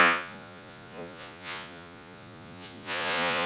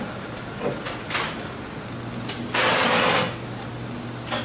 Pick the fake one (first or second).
first